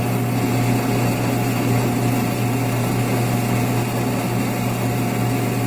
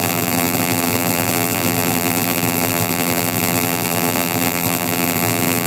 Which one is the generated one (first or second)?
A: second